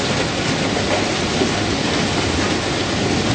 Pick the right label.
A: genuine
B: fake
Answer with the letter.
A